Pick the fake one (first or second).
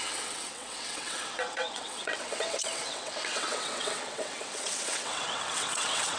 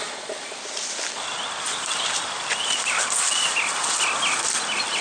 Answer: first